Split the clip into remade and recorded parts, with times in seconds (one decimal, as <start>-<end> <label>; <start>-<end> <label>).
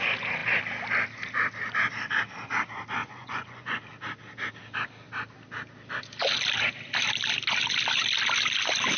0.0-3.0 recorded; 3.0-3.8 remade; 3.8-9.0 recorded